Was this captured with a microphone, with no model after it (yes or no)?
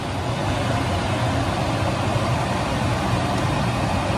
yes